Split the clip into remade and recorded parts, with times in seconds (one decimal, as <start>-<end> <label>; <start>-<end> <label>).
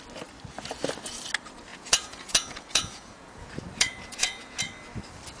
0.0-1.7 recorded; 1.7-4.6 remade; 4.6-5.4 recorded